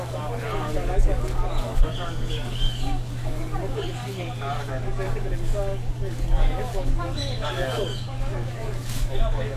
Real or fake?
fake